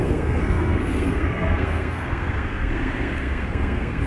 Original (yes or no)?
no